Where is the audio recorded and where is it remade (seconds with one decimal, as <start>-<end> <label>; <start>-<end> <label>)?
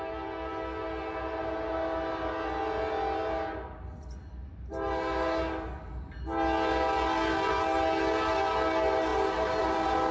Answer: 0.0-10.1 recorded